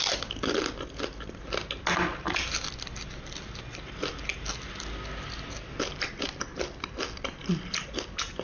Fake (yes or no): no